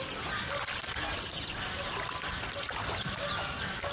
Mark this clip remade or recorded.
recorded